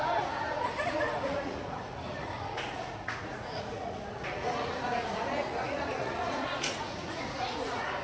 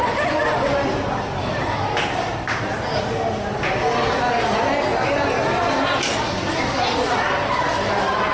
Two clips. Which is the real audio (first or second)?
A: second